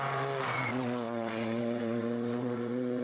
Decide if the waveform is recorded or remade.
remade